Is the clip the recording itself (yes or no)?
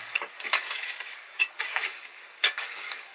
no